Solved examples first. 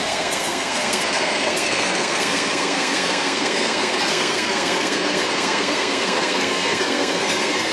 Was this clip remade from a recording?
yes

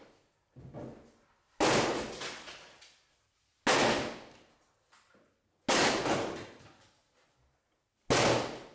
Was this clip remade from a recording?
no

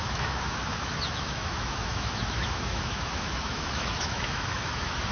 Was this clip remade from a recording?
yes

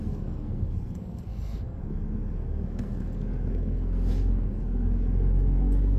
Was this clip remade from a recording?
yes